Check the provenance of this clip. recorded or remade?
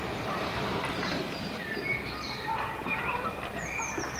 remade